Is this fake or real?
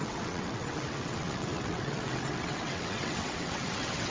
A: fake